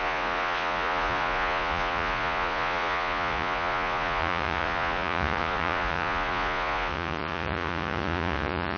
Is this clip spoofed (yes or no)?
yes